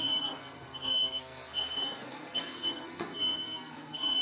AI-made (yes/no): yes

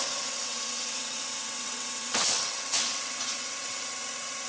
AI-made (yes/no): yes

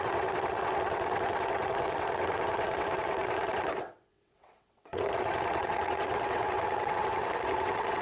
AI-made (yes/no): yes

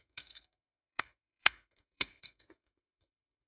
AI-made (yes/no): yes